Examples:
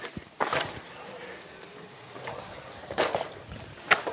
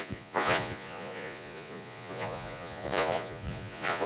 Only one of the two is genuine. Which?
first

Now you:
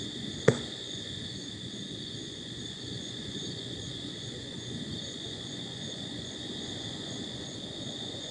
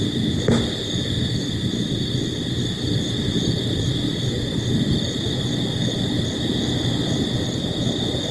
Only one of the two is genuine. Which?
second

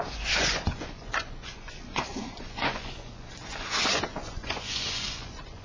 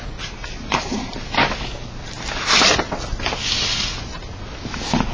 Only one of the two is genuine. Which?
second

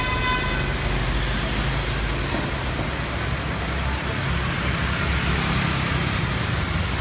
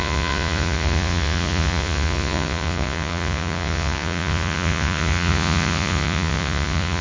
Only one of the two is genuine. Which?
first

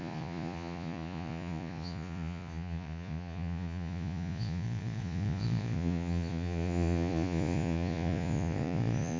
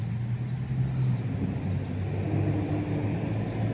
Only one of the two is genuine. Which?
second